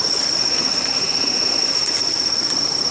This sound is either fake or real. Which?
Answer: real